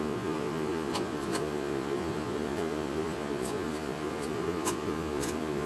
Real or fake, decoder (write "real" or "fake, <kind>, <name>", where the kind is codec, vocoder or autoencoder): fake, vocoder, Vocos